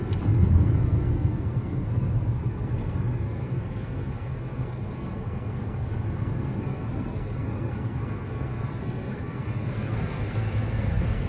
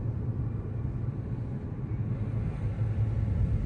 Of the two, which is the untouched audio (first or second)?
second